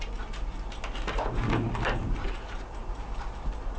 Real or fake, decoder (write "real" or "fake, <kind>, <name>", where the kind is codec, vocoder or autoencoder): real